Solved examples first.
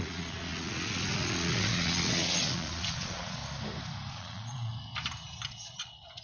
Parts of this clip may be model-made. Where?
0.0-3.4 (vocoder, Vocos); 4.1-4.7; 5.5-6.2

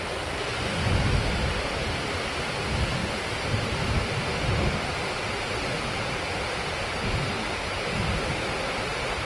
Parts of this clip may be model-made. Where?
0.5-1.0 (vocoder, Vocos)

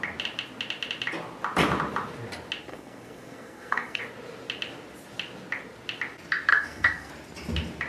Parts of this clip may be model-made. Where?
2.7-4.0 (codec, SNAC); 6.5-7.1

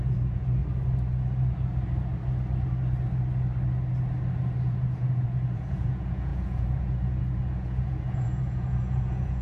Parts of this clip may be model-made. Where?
0.0-0.6 (vocoder, Vocos); 4.6-9.4